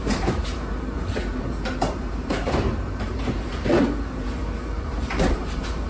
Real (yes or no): no